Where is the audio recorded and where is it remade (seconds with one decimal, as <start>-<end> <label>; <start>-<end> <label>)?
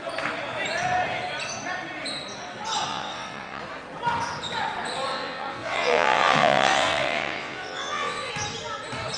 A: 0.0-2.9 recorded; 2.9-3.6 remade; 3.6-5.1 recorded; 5.1-8.3 remade; 8.3-9.2 recorded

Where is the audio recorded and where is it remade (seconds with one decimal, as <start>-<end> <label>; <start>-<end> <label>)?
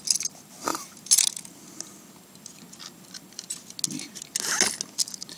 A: 0.0-5.4 recorded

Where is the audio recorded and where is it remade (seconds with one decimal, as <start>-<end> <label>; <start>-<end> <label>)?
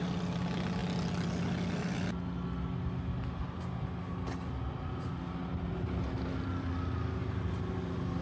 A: 0.0-8.2 recorded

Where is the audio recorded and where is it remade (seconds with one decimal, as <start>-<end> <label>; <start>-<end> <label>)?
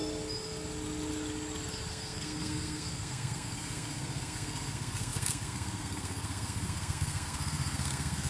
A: 0.0-1.9 recorded; 1.9-8.3 remade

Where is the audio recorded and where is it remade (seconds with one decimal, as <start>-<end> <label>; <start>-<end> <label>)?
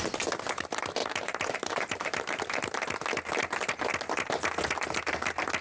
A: 0.0-1.0 recorded; 1.0-2.4 remade; 2.4-5.6 recorded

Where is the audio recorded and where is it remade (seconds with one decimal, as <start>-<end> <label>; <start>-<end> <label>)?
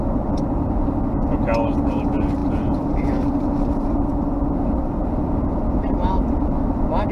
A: 0.0-2.4 recorded; 2.4-7.1 remade